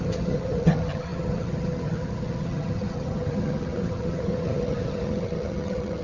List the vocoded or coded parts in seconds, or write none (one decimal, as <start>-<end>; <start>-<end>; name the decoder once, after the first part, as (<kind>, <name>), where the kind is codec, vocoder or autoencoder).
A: 0.0-6.0 (vocoder, HiFi-GAN)